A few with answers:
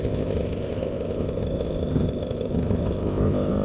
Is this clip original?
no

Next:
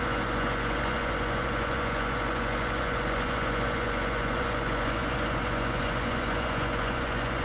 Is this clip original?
no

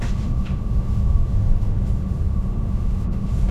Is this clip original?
no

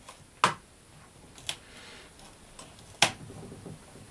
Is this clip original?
yes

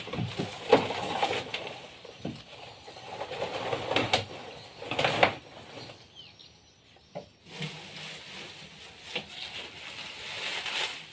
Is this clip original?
yes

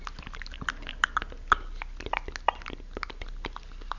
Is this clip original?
yes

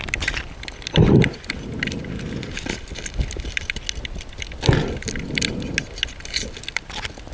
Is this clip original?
yes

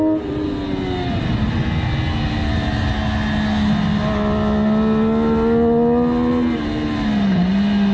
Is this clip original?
yes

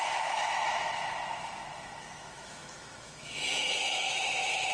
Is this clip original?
no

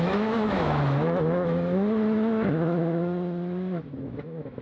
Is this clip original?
no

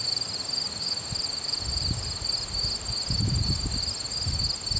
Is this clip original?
yes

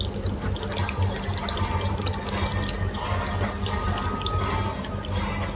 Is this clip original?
yes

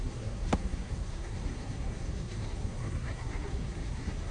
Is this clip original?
no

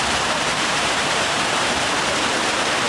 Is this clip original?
no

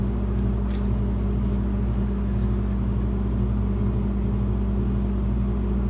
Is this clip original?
yes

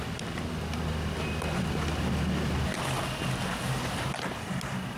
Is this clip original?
yes